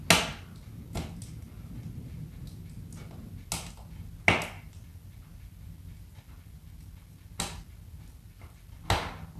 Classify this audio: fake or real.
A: real